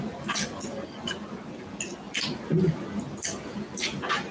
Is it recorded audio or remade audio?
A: recorded